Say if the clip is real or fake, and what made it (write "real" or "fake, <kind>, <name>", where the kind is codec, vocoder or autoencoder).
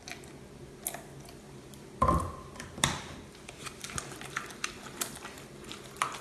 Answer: real